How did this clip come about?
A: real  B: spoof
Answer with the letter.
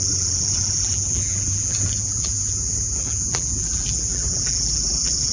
B